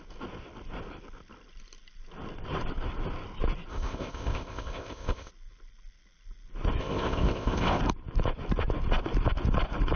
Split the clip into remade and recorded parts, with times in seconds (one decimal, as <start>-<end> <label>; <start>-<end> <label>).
0.0-3.7 recorded; 3.7-5.3 remade; 5.3-6.8 recorded; 6.8-7.8 remade; 7.8-10.0 recorded